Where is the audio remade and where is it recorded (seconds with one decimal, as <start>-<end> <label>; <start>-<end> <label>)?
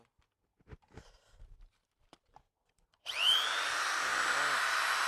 0.0-0.5 recorded; 0.5-3.6 remade; 3.6-5.1 recorded